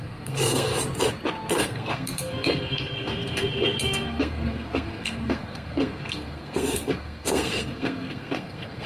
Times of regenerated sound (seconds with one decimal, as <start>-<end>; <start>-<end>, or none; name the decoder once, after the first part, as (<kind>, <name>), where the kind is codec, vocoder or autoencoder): 0.0-0.7 (codec, SNAC); 1.5-8.9